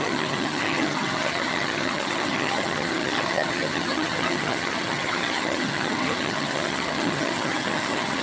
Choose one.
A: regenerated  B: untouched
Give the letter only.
A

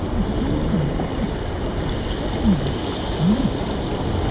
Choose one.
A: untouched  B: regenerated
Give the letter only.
A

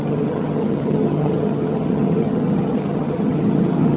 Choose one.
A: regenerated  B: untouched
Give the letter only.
A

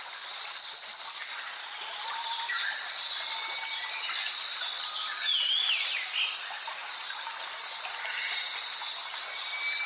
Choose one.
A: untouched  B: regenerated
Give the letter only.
A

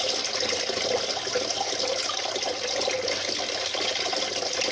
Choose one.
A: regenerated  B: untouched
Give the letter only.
B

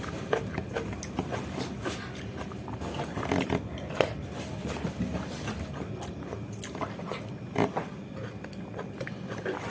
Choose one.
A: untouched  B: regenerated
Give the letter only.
A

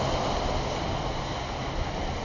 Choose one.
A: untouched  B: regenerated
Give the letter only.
A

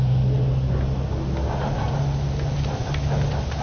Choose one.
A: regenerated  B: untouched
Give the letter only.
B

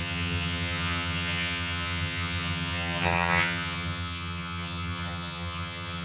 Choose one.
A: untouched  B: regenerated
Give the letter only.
B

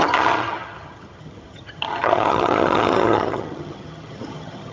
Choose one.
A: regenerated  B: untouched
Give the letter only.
A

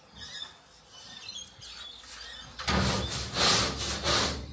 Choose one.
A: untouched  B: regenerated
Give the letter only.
A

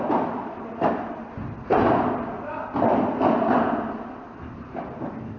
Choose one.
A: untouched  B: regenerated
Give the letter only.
A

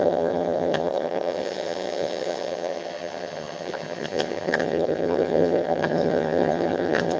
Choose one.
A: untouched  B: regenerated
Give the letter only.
B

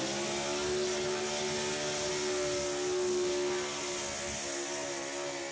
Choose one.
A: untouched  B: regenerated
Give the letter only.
A